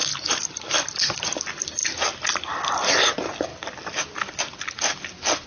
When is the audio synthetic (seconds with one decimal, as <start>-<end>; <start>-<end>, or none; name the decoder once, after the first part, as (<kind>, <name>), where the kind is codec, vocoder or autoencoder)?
none